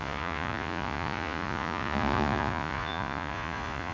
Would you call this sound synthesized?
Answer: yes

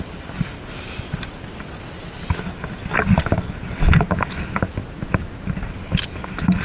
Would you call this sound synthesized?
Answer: no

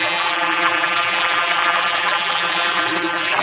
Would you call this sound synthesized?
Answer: yes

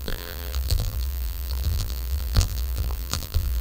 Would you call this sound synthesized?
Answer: yes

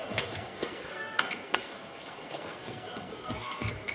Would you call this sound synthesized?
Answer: yes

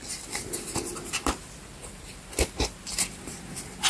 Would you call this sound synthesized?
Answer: no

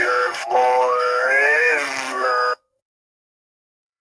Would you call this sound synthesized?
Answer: yes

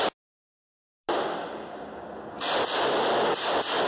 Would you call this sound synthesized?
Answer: no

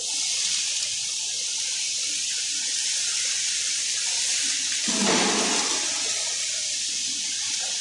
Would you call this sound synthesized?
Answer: no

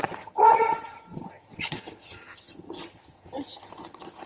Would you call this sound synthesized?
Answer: yes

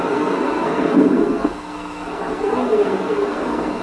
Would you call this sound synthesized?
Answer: yes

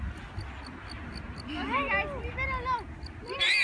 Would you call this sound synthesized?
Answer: no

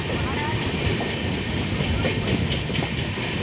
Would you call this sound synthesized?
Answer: no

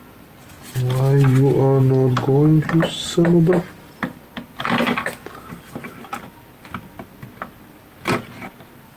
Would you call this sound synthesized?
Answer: no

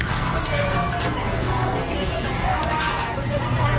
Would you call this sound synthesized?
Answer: yes